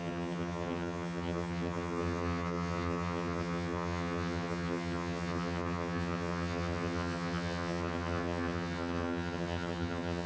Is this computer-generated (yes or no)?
yes